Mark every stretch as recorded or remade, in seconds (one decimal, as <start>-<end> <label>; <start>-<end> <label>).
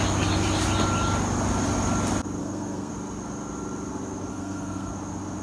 0.0-2.4 recorded; 2.4-2.9 remade; 2.9-4.3 recorded; 4.3-4.9 remade; 4.9-5.4 recorded